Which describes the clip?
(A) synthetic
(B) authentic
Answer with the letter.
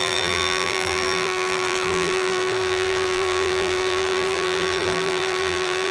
A